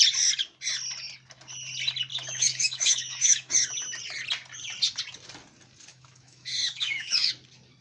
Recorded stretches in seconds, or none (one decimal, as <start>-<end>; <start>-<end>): 0.0-2.1; 3.5-5.9; 7.3-7.8